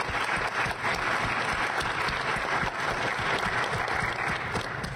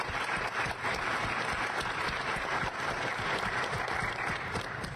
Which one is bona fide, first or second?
first